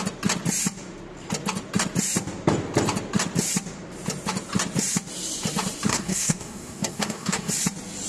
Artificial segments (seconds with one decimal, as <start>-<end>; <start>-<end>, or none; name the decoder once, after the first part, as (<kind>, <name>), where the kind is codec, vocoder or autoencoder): 5.9-7.5 (codec, SNAC)